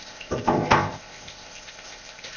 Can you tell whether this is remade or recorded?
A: remade